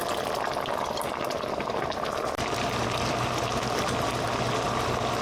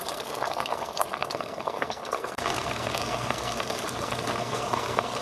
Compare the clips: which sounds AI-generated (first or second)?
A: second